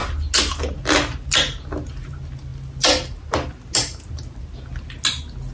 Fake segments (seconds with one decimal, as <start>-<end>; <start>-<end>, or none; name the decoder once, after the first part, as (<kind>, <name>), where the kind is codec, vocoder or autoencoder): none